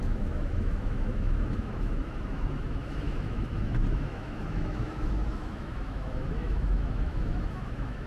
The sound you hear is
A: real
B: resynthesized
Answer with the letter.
B